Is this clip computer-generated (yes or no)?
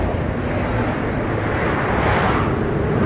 no